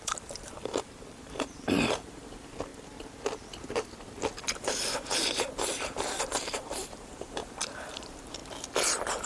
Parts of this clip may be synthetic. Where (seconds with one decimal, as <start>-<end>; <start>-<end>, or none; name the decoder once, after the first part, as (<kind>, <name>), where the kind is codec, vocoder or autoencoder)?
0.0-2.7 (vocoder, BigVGAN v2); 4.4-8.4